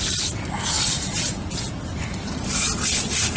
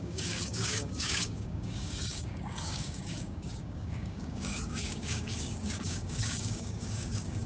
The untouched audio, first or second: first